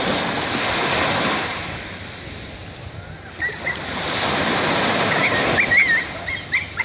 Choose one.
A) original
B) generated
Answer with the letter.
A